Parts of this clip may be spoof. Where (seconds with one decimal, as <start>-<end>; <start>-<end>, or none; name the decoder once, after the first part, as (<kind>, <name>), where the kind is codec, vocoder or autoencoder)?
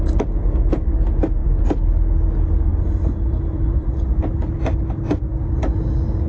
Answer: 0.0-6.3 (vocoder, BigVGAN v2)